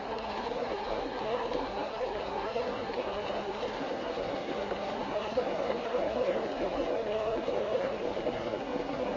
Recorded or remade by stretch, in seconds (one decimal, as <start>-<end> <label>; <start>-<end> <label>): 0.0-9.2 remade